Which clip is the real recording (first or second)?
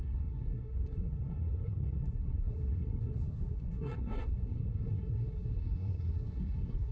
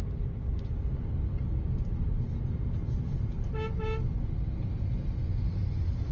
second